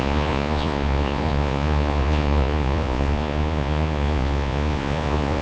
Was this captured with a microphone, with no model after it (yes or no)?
no